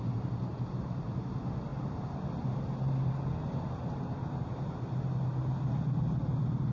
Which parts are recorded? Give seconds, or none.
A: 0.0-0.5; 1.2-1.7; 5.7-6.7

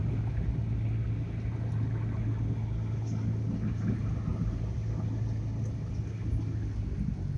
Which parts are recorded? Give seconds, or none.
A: 0.0-7.4

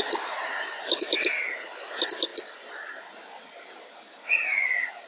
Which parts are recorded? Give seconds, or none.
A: 0.0-5.1

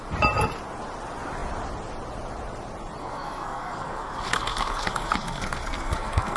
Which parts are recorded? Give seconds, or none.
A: 0.0-3.0